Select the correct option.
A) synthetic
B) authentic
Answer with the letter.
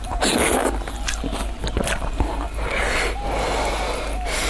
B